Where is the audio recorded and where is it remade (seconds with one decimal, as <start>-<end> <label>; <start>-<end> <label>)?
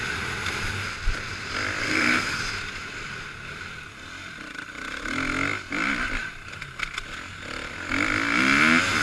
0.0-1.8 recorded; 1.8-2.4 remade; 2.4-9.0 recorded